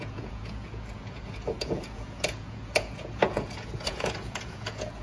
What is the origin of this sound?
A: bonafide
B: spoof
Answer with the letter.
B